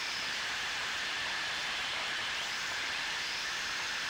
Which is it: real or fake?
fake